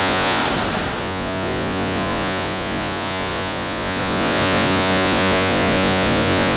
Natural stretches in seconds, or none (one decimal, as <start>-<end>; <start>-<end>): 0.4-1.0